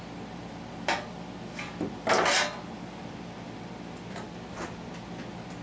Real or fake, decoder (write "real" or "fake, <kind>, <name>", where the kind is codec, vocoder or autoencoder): real